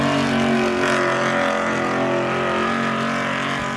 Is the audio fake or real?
real